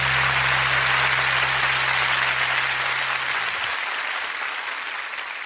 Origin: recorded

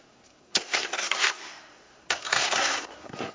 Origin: remade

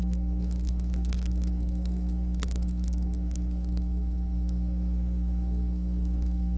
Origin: remade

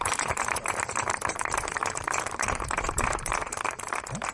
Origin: remade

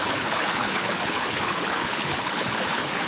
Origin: remade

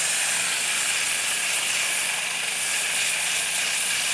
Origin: remade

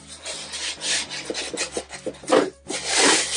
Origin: recorded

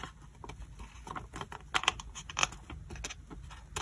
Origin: recorded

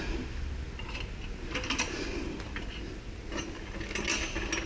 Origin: recorded